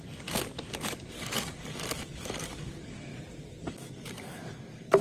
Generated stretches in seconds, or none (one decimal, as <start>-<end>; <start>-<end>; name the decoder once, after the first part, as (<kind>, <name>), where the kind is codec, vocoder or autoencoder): 0.0-3.1 (codec, DAC); 3.6-5.0